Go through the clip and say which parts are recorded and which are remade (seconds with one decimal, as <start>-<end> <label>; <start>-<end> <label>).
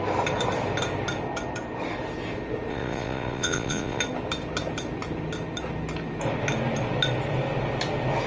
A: 0.0-2.7 recorded; 2.7-4.0 remade; 4.0-8.3 recorded